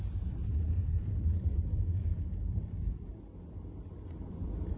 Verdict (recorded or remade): remade